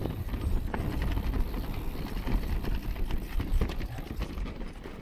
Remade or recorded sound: recorded